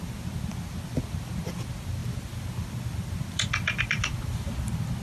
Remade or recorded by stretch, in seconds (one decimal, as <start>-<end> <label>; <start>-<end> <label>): 0.0-5.0 recorded